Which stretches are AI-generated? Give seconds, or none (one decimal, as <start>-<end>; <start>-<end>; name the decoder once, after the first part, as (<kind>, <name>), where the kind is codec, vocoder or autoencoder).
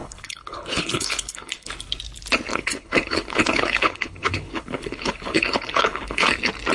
0.0-1.7 (codec, HILCodec); 2.5-6.3